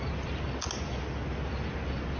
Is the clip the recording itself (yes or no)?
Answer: yes